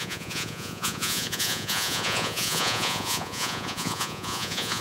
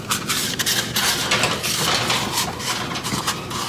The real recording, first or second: second